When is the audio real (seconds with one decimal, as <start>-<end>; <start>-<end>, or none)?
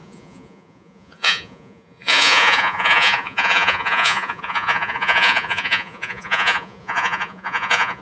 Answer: none